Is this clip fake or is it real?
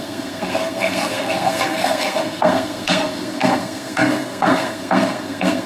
fake